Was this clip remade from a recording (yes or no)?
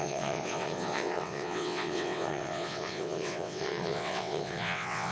yes